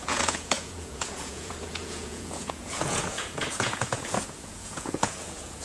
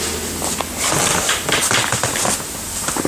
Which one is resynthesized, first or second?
first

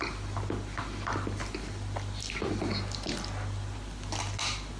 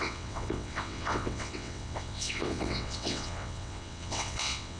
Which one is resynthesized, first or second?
second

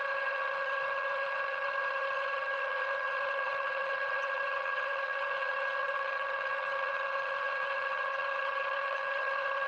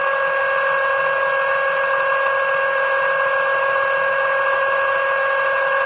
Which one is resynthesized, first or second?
first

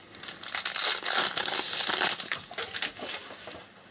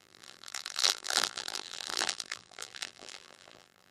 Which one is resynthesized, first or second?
second